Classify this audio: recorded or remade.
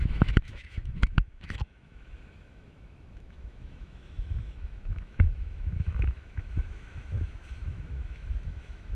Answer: remade